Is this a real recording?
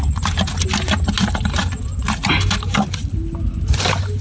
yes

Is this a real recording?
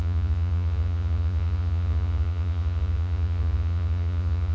no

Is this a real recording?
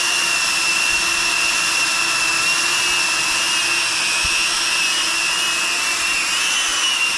yes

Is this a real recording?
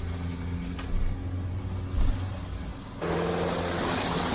yes